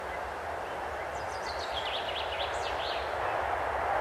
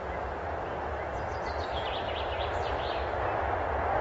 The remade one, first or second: second